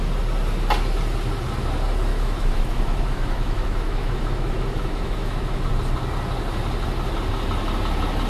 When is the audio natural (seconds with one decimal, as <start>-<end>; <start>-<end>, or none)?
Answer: 0.0-2.1; 5.7-8.3